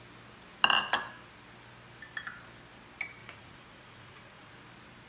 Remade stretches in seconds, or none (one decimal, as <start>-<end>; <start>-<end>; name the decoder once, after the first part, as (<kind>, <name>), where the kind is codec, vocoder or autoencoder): 3.2-4.5 (vocoder, Vocos)